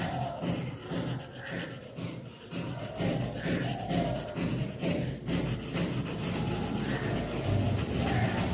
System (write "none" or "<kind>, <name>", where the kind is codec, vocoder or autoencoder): none